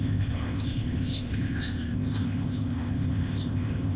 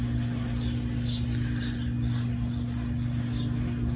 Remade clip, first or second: first